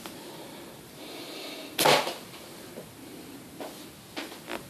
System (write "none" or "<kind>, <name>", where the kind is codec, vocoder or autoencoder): none